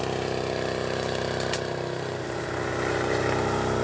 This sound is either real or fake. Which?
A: real